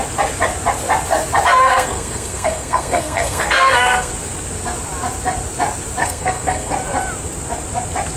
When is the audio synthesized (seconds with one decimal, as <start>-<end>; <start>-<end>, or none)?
1.7-4.1; 6.0-6.7